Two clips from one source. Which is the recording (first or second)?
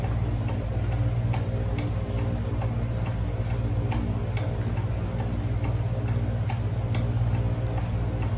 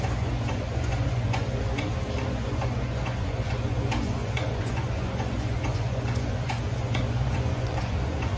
first